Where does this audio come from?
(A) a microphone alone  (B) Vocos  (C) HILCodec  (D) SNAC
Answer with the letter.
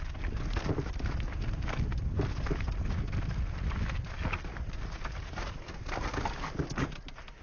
A